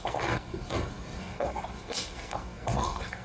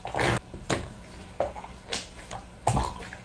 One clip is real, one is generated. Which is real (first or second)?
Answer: second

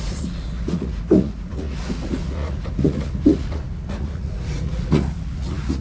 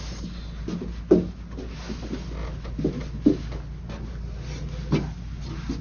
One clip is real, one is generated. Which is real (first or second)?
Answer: second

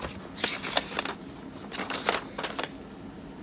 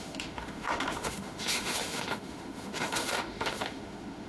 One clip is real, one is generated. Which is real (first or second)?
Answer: first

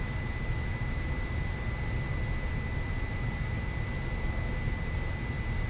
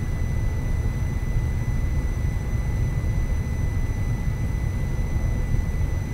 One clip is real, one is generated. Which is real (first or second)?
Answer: first